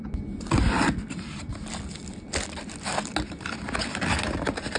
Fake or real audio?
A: real